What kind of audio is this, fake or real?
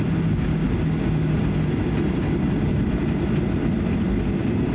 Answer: real